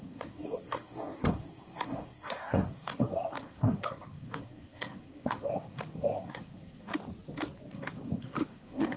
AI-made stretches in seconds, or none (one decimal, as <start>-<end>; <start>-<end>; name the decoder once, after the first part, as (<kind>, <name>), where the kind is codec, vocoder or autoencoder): 0.0-6.9 (codec, SNAC); 7.7-9.0

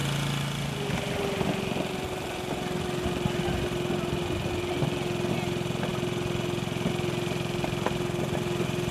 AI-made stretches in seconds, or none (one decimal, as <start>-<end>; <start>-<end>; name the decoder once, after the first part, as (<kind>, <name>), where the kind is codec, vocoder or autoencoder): none

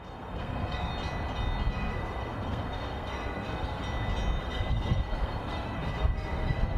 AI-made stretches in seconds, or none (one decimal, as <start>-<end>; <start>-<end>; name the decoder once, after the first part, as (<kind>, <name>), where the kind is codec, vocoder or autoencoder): 0.0-0.9 (codec, SNAC); 1.7-3.8; 4.4-6.8

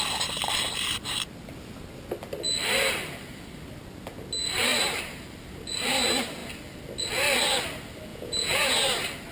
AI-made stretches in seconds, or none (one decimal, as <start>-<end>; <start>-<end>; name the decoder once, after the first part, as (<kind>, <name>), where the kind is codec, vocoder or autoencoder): 8.1-8.8 (vocoder, Vocos)

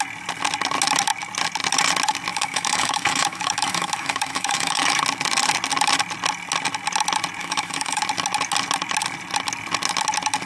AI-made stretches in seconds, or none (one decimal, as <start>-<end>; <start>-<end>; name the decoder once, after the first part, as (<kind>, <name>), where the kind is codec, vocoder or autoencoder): 2.3-5.0 (autoencoder, DAC-VAE); 7.4-8.0